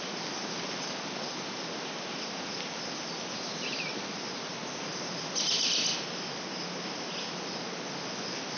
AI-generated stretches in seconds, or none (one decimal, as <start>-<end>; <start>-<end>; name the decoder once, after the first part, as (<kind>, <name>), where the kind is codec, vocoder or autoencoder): 3.9-4.7 (vocoder, BigVGAN v2)